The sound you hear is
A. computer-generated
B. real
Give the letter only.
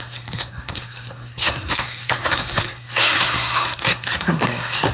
A